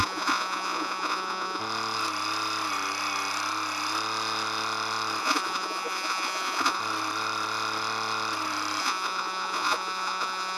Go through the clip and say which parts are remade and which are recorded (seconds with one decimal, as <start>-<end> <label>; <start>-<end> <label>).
0.0-1.6 remade; 1.6-5.2 recorded; 5.2-6.8 remade; 6.8-8.8 recorded; 8.8-10.6 remade

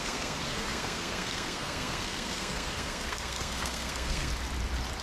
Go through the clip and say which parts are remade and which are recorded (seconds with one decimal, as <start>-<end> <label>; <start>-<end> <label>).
0.0-4.3 remade; 4.3-5.0 recorded

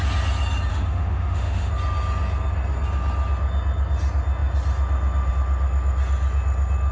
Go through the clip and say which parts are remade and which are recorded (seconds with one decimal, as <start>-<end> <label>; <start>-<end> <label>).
0.0-0.7 recorded; 0.7-1.7 remade; 1.7-6.9 recorded

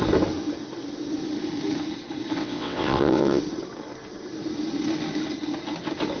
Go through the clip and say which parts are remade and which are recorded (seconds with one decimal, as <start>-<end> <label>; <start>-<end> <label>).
0.0-2.4 recorded; 2.4-3.4 remade; 3.4-6.2 recorded

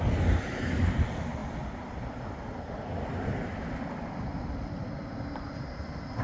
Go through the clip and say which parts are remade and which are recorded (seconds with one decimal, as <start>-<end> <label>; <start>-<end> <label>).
0.0-1.4 remade; 1.4-5.1 recorded; 5.1-6.2 remade

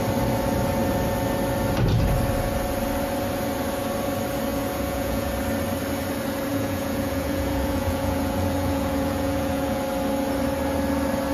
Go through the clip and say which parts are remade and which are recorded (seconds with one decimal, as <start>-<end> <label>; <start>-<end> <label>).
0.0-4.5 recorded; 4.5-5.3 remade; 5.3-6.5 recorded; 6.5-9.8 remade; 9.8-11.3 recorded

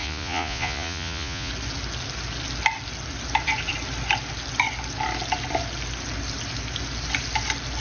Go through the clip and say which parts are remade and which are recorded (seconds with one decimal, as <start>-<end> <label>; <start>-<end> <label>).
0.0-1.5 remade; 1.5-7.8 recorded